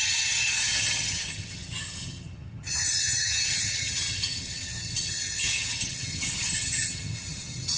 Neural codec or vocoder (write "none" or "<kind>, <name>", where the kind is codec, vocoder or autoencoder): vocoder, HiFi-GAN